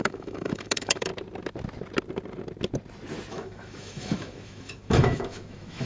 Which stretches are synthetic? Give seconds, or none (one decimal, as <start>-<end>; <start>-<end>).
0.0-1.1; 3.3-5.9